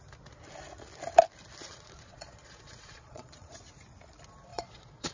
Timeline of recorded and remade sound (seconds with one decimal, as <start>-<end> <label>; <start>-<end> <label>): 0.0-1.6 recorded; 1.6-3.6 remade; 3.6-4.5 recorded; 4.5-5.1 remade